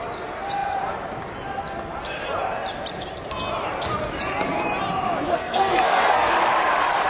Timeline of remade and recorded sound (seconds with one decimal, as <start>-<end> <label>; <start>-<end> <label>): 0.0-5.3 recorded; 5.3-6.3 remade; 6.3-7.1 recorded